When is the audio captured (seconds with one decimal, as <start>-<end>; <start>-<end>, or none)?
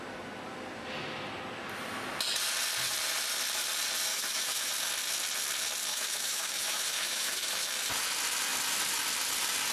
0.0-4.1; 4.7-5.9; 7.7-9.7